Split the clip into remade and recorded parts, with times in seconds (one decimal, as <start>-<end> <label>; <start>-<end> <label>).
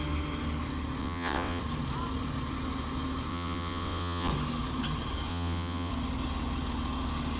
0.0-1.0 recorded; 1.0-1.6 remade; 1.6-3.3 recorded; 3.3-4.3 remade; 4.3-5.3 recorded; 5.3-5.9 remade; 5.9-7.4 recorded